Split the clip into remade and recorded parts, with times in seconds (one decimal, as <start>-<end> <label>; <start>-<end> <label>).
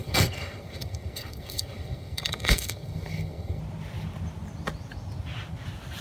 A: 0.0-3.6 remade; 3.6-6.0 recorded